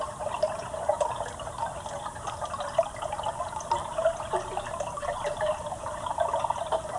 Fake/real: real